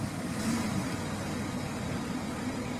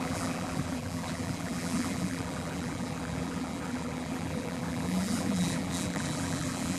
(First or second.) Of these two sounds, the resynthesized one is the second